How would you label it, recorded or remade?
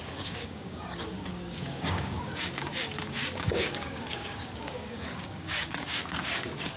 remade